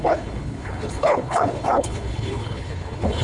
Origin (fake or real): fake